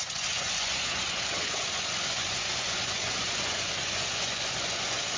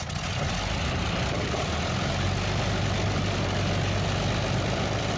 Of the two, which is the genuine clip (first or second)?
second